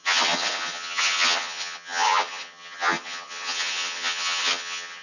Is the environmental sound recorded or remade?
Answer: remade